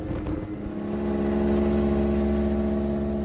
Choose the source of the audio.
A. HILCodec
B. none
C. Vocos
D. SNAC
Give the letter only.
B